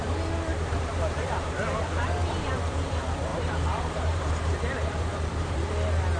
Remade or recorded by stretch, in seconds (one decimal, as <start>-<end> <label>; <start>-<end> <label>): 0.0-0.5 recorded; 0.5-1.5 remade; 1.5-3.3 recorded; 3.3-4.4 remade; 4.4-5.1 recorded; 5.1-5.7 remade; 5.7-6.2 recorded